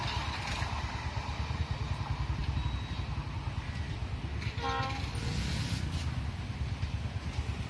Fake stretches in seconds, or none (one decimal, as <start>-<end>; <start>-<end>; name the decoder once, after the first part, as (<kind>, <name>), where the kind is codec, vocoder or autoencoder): none